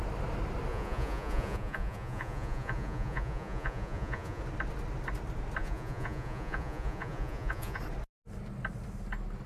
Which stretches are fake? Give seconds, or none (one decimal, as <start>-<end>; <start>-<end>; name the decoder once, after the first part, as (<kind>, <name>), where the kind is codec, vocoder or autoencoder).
0.7-4.4 (vocoder, Vocos); 5.6-7.8